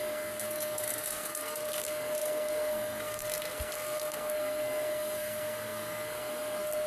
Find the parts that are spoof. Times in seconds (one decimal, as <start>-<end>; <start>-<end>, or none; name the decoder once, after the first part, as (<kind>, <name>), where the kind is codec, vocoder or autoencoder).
0.0-6.9 (codec, SNAC)